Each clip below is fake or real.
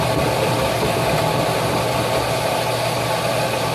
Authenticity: real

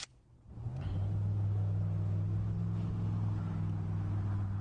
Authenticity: real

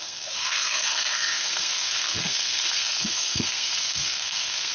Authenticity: fake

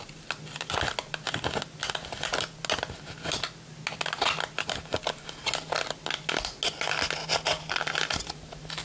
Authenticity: real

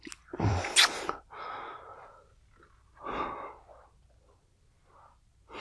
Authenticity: real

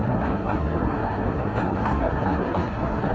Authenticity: fake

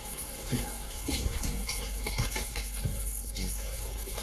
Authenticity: fake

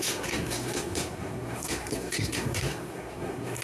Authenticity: fake